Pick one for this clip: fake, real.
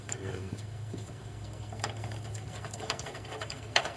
fake